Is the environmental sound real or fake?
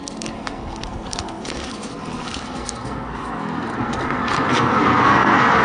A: fake